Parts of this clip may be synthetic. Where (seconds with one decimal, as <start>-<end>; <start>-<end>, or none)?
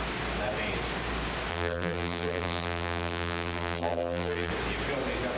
1.5-4.5